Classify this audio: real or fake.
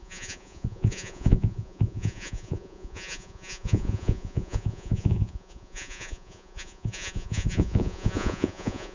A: fake